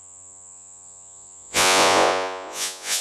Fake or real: fake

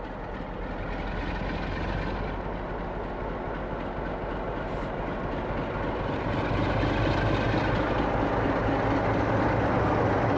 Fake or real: real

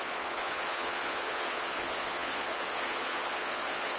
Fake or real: fake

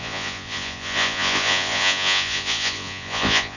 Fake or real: fake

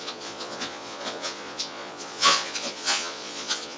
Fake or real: fake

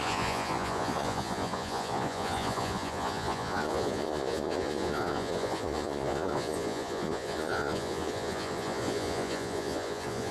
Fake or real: fake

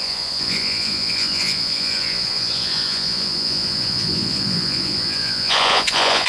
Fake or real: fake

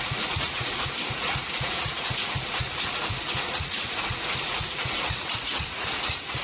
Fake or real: fake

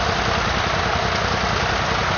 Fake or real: real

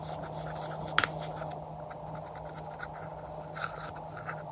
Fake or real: real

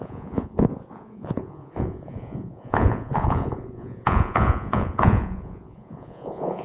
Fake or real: fake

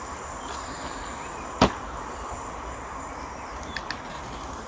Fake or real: real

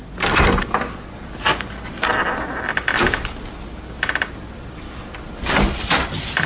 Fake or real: real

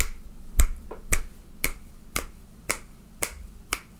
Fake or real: real